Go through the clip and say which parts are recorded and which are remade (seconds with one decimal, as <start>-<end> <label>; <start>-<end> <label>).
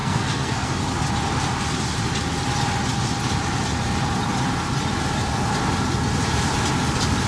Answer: 0.0-0.8 remade; 0.8-7.3 recorded